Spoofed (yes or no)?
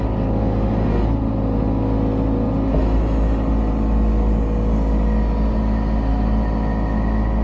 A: no